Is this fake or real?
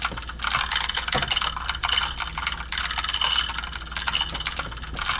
real